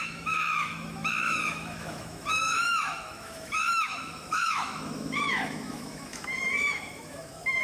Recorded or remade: remade